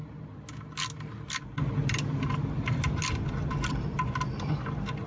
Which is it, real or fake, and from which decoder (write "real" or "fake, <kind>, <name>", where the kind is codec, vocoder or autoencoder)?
real